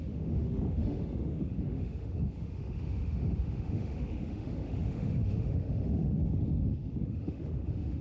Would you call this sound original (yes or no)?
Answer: no